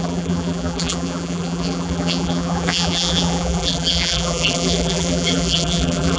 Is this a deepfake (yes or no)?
yes